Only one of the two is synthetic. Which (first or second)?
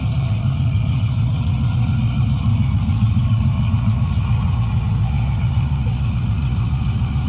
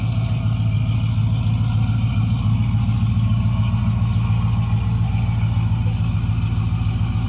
first